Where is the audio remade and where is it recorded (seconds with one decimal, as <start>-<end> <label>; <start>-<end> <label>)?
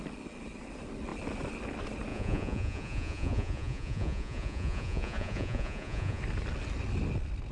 0.0-2.1 recorded; 2.1-6.2 remade; 6.2-7.5 recorded